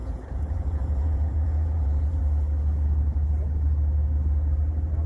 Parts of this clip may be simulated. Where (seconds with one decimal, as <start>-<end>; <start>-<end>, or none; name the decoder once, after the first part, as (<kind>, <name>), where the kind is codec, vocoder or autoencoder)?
0.0-2.2 (vocoder, Vocos)